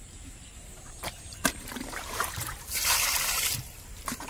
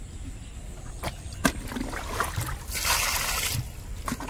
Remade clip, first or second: first